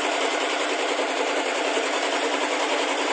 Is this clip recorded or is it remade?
remade